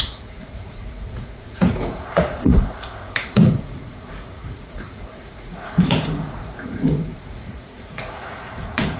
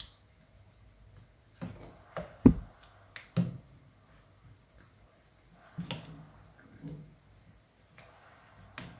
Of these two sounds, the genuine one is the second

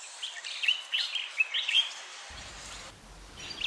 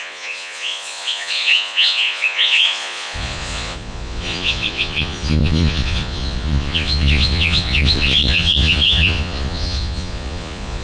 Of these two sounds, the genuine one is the first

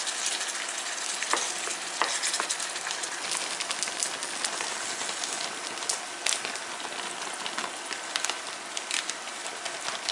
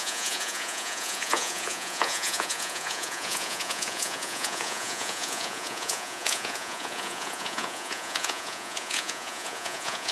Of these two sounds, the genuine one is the first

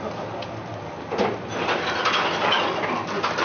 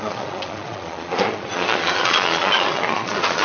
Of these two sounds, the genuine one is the first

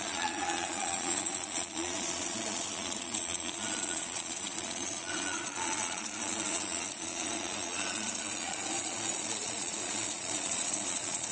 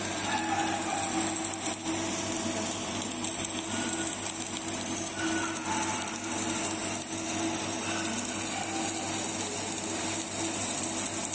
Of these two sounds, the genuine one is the second